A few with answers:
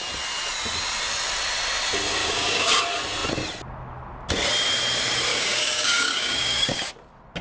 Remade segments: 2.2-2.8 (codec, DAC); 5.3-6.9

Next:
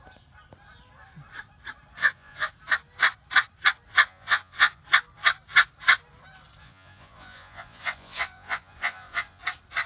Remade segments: 2.0-2.5 (vocoder, Vocos); 4.1-4.8; 6.6-9.4